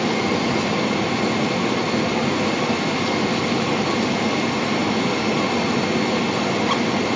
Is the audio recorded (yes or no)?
yes